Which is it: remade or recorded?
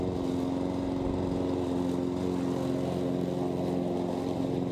recorded